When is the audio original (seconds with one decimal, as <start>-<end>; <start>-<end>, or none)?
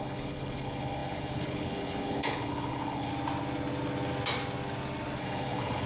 3.1-5.2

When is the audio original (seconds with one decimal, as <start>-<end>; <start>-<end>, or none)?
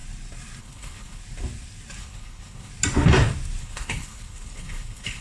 0.0-0.6; 1.2-2.0; 2.7-3.6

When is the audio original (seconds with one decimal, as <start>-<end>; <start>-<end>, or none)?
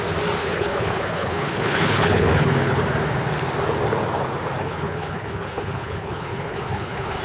0.0-0.4; 2.8-4.6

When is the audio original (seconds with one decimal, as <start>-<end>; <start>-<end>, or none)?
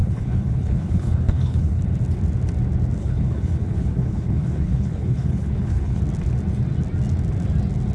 1.8-3.0; 6.0-7.9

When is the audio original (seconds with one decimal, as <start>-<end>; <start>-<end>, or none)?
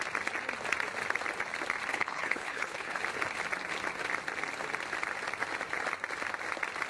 0.0-1.9; 3.0-6.9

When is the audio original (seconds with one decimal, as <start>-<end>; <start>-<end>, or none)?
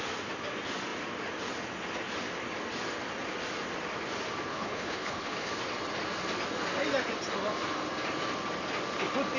0.0-4.5; 5.5-9.4